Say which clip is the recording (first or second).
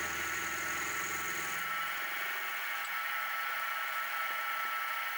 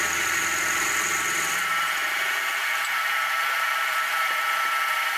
first